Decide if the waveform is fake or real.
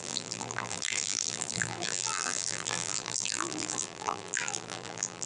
fake